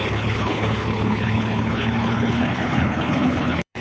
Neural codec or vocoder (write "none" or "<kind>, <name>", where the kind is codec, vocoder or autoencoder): codec, HILCodec